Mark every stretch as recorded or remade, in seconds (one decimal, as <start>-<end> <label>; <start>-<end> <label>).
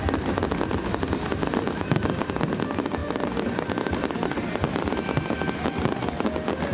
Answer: 0.0-6.7 recorded